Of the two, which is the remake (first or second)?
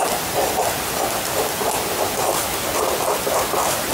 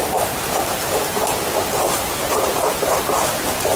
second